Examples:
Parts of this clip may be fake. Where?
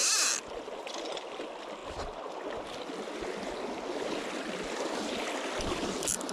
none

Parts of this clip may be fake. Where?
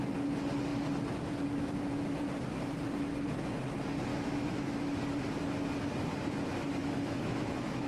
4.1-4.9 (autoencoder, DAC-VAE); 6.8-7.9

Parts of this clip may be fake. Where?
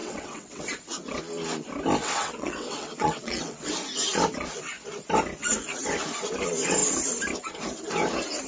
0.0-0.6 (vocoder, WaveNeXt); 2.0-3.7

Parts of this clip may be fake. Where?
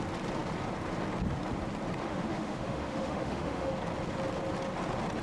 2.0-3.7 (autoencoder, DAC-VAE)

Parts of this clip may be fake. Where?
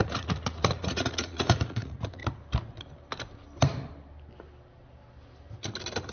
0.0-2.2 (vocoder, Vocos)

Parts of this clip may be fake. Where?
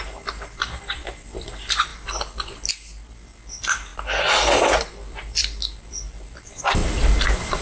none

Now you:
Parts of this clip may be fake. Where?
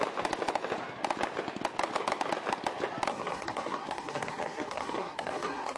3.1-5.8 (codec, SNAC)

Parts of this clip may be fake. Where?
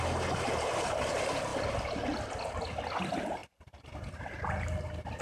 none